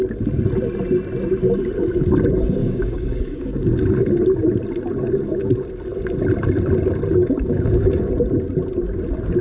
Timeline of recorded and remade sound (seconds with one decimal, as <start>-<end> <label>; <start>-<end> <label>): 0.0-2.6 recorded; 2.6-3.7 remade; 3.7-7.2 recorded; 7.2-8.1 remade; 8.1-9.4 recorded